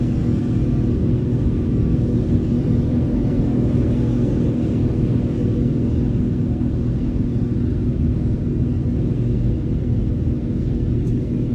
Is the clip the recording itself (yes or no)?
no